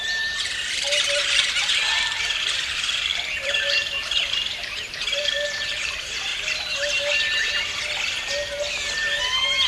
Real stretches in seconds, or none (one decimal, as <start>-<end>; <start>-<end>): 6.3-9.2